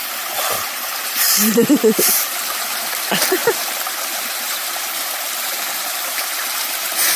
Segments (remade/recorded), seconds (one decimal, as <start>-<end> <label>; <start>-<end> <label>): 0.0-7.2 remade